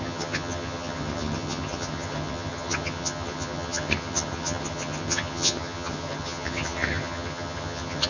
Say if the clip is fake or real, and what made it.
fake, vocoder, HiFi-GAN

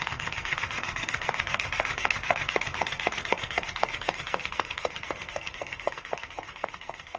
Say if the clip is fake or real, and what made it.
fake, codec, SNAC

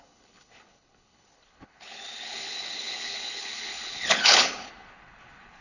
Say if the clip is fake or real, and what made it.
fake, codec, HILCodec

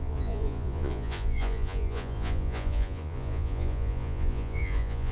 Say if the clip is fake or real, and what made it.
fake, vocoder, Vocos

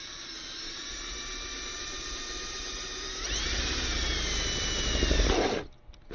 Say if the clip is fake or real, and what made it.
fake, vocoder, BigVGAN v2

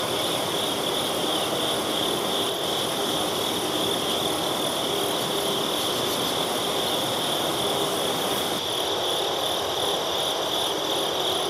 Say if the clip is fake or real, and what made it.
real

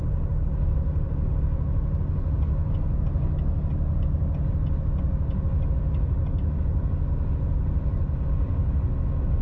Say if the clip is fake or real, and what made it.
real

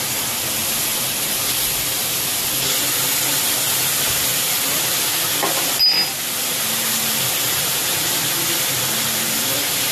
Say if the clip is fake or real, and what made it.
real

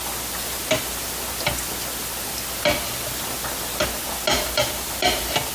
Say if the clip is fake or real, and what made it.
real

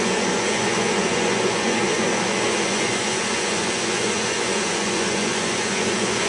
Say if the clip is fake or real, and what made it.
fake, vocoder, Vocos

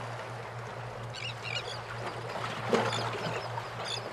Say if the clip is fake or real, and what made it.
real